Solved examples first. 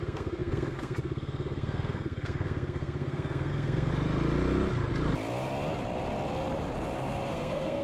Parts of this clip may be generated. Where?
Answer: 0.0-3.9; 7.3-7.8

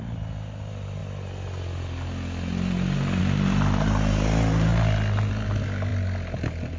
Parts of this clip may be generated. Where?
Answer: none

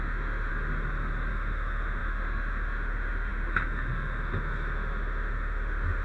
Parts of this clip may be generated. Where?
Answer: 0.0-0.5; 1.3-6.0